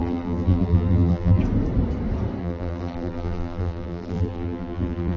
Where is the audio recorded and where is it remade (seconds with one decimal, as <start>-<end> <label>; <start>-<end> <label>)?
0.0-1.4 remade; 1.4-2.4 recorded; 2.4-5.2 remade